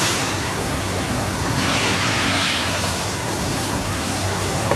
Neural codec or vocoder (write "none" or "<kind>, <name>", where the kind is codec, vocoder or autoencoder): codec, SNAC